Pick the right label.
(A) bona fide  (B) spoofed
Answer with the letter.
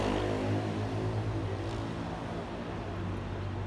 A